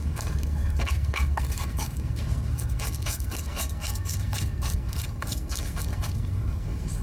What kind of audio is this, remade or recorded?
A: remade